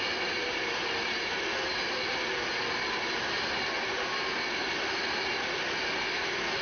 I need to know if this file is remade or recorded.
recorded